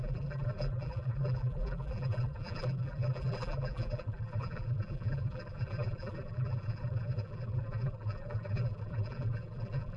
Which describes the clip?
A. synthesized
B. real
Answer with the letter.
A